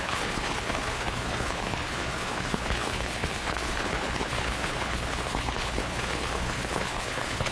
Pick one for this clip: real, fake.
fake